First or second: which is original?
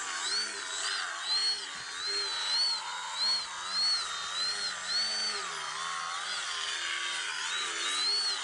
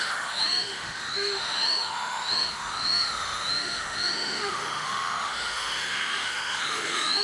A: first